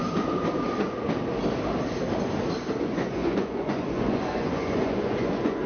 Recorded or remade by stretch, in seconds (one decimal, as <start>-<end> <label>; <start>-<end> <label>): 0.0-2.8 recorded; 2.8-5.7 remade